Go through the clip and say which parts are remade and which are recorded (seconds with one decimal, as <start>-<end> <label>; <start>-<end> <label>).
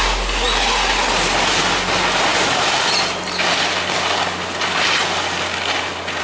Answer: 0.0-6.2 recorded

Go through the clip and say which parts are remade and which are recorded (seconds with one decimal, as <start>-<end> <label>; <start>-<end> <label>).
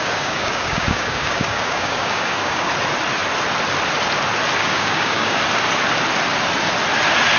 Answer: 0.0-2.7 remade; 2.7-4.6 recorded; 4.6-5.4 remade; 5.4-7.4 recorded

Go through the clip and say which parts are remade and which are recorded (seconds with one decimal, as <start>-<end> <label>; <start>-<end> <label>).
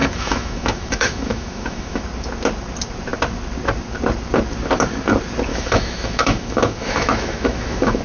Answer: 0.0-2.0 remade; 2.0-5.5 recorded; 5.5-8.0 remade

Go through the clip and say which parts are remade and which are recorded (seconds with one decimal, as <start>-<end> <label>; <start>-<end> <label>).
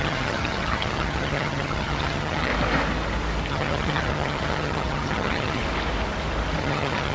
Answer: 0.0-2.5 remade; 2.5-3.5 recorded; 3.5-5.6 remade; 5.6-6.6 recorded; 6.6-7.1 remade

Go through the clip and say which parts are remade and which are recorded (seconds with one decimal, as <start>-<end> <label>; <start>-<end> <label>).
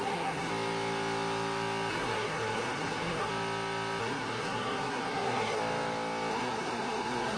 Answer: 0.0-0.5 remade; 0.5-1.9 recorded; 1.9-3.3 remade; 3.3-4.0 recorded; 4.0-5.6 remade; 5.6-6.3 recorded; 6.3-7.4 remade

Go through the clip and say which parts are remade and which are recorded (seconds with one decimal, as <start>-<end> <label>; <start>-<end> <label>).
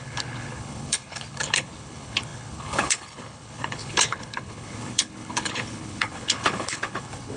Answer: 0.0-7.4 remade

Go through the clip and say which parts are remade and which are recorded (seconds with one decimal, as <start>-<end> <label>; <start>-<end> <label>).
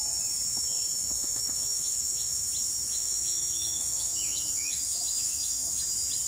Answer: 0.0-0.5 recorded; 0.5-2.5 remade; 2.5-2.9 recorded; 2.9-5.8 remade; 5.8-6.3 recorded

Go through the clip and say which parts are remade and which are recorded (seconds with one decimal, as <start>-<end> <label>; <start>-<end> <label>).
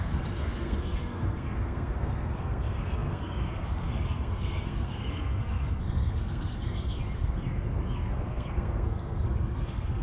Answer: 0.0-10.0 remade